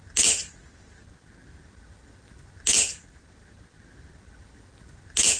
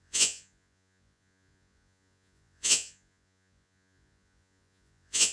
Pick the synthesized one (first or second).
second